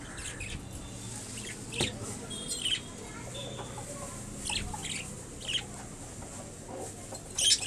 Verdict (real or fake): real